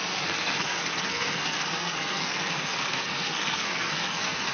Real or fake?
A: fake